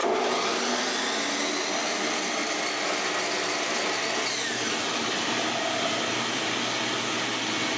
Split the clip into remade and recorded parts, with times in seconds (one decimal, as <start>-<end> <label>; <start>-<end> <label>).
0.0-2.4 recorded; 2.4-3.0 remade; 3.0-7.8 recorded